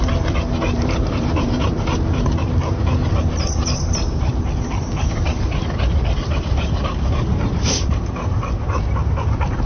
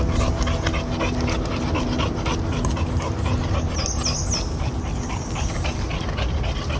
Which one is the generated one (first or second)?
first